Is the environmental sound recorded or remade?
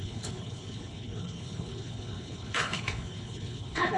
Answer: remade